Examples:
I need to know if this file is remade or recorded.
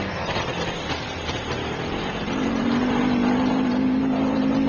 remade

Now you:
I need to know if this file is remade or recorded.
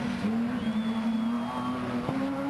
recorded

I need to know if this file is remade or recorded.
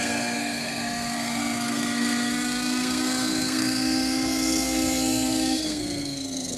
remade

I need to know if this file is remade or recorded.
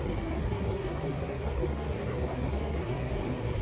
remade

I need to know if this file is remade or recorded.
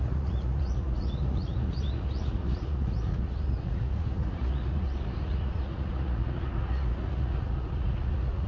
remade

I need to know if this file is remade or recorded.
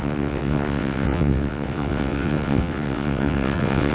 remade